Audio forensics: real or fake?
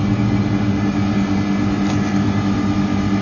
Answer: real